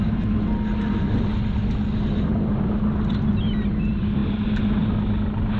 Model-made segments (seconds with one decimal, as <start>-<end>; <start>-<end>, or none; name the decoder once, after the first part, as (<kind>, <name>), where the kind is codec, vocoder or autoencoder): none